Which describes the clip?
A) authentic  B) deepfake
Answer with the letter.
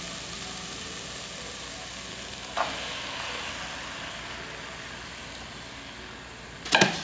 A